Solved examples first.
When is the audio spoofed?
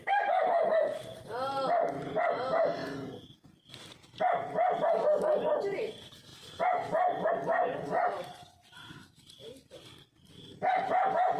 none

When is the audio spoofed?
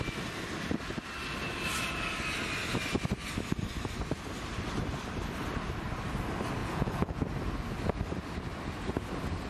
6.6-7.2 (vocoder, Vocos)